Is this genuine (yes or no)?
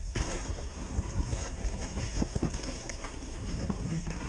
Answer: no